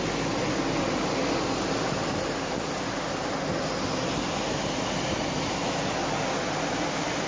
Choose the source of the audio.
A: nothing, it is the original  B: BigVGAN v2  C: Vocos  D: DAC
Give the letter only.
A